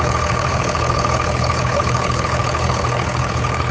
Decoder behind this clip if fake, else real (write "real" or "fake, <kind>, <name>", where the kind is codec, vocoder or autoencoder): fake, codec, HILCodec